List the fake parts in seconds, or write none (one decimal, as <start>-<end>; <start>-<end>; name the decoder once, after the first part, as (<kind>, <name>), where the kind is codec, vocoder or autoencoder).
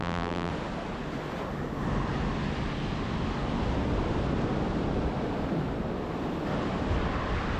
0.0-0.5 (vocoder, BigVGAN v2)